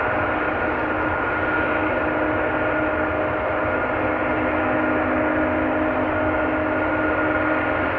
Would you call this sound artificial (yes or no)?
no